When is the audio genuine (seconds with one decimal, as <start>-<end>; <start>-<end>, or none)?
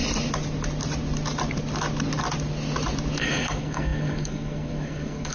0.0-3.2